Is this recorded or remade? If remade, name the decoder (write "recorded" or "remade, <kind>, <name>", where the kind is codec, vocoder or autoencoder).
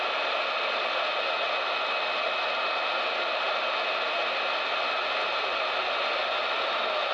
recorded